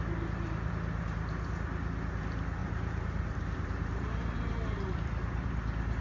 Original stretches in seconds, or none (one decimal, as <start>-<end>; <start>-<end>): 0.0-2.6; 5.5-6.0